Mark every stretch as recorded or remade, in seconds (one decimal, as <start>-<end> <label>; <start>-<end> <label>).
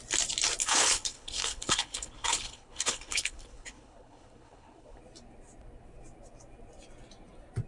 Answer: 0.0-0.6 recorded; 0.6-5.0 remade; 5.0-7.7 recorded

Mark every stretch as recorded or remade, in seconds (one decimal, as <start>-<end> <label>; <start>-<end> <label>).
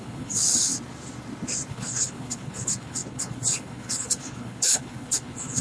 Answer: 0.0-0.7 remade; 0.7-1.7 recorded; 1.7-5.6 remade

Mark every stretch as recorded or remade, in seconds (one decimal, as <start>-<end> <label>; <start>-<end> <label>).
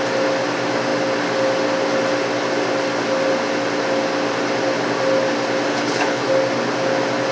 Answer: 0.0-5.7 recorded; 5.7-6.3 remade; 6.3-7.3 recorded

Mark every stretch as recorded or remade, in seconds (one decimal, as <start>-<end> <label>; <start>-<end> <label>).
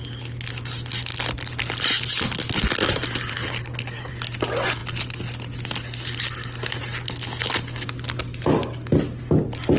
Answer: 0.0-3.3 recorded; 3.3-4.1 remade; 4.1-9.8 recorded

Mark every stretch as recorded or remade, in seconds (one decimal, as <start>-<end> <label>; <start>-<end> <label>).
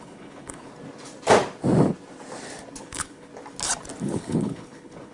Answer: 0.0-0.7 remade; 0.7-2.8 recorded; 2.8-3.3 remade; 3.3-4.0 recorded; 4.0-5.1 remade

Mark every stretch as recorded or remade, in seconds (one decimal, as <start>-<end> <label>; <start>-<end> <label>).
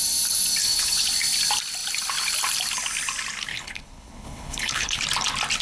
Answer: 0.0-0.6 recorded; 0.6-1.1 remade; 1.1-3.5 recorded; 3.5-5.0 remade; 5.0-5.6 recorded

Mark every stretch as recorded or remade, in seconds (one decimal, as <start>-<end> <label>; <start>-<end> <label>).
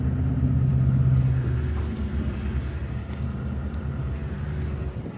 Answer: 0.0-5.2 recorded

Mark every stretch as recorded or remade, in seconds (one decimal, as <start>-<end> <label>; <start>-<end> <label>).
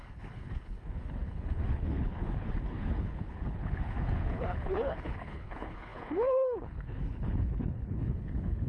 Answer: 0.0-8.7 remade